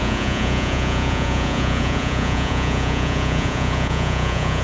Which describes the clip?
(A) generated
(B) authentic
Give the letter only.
A